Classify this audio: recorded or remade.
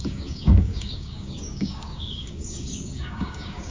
remade